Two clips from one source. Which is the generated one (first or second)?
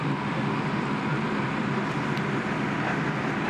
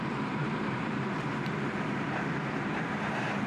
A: second